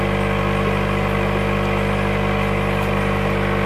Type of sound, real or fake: real